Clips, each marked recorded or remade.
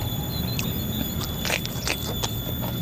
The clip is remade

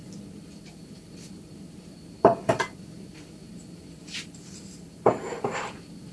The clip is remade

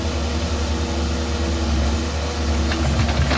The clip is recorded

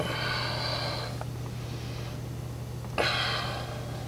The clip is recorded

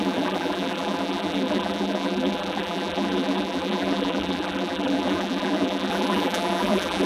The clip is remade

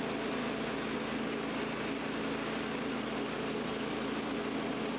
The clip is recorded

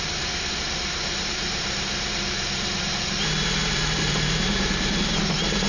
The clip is remade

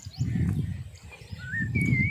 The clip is recorded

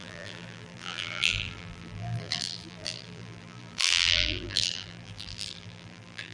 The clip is remade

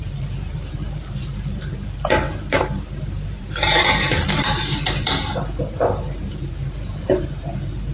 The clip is remade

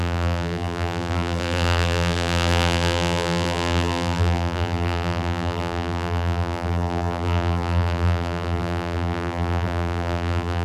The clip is remade